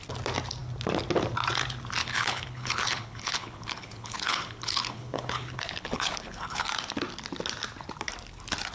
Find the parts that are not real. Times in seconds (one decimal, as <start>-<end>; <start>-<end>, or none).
2.0-6.7